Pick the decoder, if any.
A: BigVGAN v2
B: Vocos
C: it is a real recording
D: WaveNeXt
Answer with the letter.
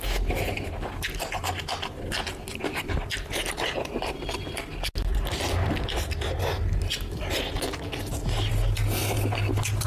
C